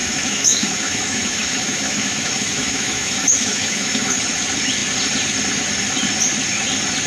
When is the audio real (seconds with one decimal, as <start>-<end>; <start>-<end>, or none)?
4.2-7.1